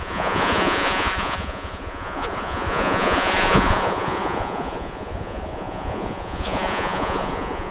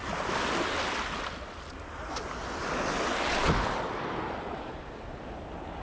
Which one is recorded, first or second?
second